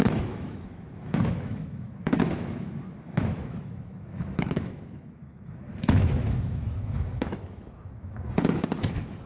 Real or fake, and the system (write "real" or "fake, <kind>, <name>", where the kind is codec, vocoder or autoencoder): fake, autoencoder, DAC-VAE